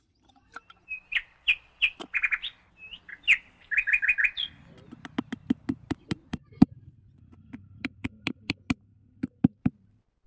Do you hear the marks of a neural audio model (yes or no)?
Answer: no